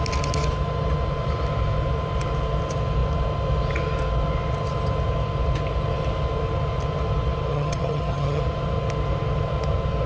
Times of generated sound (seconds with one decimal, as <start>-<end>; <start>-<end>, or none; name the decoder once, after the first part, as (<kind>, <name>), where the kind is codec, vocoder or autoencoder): 7.5-8.4 (vocoder, HiFi-GAN)